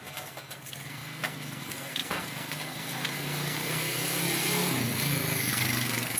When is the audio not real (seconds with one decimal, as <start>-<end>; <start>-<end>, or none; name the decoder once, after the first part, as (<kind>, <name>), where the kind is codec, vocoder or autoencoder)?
0.0-6.2 (codec, SNAC)